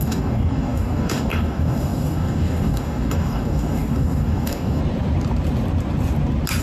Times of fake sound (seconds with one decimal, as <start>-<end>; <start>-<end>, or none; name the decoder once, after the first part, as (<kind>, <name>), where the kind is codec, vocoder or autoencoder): 0.0-4.8 (codec, DAC)

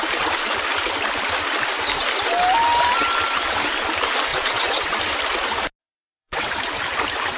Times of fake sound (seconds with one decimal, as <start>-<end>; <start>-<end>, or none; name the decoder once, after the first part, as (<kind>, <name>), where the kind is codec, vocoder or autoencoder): 4.3-5.0 (vocoder, WaveNeXt); 5.8-6.5

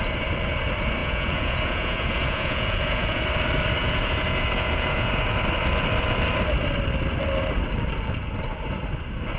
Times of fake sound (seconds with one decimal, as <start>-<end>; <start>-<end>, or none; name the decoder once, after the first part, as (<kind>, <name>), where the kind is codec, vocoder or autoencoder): 1.0-3.2 (vocoder, Vocos); 3.8-5.1